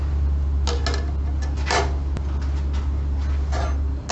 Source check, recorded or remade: recorded